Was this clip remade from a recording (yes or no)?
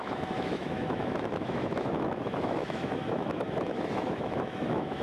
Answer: yes